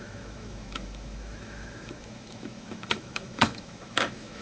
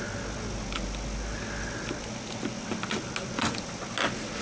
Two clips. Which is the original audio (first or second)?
second